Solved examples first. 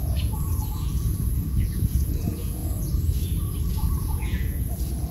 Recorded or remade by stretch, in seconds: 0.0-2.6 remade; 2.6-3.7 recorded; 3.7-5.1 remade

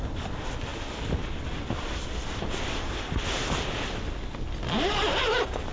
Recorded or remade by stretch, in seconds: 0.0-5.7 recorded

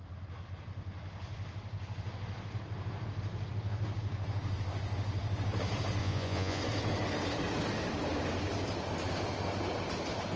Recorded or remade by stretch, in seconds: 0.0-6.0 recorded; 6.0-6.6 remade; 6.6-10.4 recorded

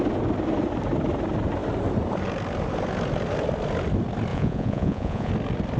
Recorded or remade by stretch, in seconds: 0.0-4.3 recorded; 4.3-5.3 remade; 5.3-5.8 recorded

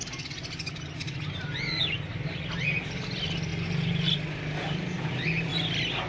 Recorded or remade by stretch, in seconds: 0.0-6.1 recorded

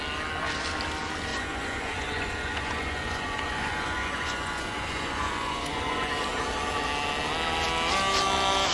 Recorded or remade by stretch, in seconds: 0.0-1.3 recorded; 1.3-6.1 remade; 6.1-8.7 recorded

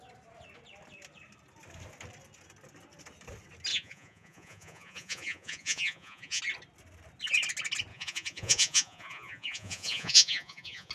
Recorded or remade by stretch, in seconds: 0.0-3.7 recorded; 3.7-6.4 remade; 6.4-7.9 recorded; 7.9-10.9 remade